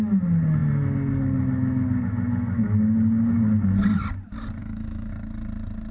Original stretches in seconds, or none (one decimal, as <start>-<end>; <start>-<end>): 0.0-4.6; 5.1-5.9